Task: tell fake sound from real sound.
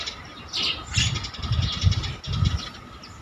real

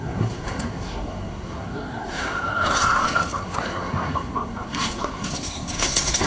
fake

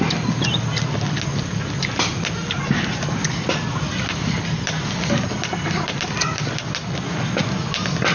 real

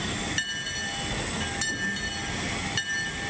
real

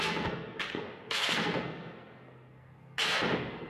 fake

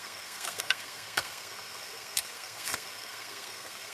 fake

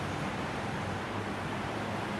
real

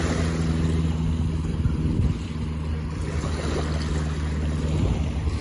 real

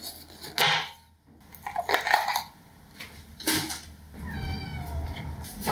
real